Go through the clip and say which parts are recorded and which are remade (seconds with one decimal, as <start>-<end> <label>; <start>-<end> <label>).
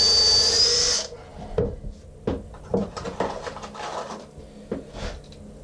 0.0-5.6 recorded